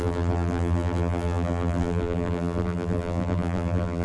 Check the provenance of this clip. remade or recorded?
remade